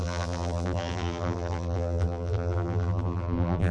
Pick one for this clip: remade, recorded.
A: remade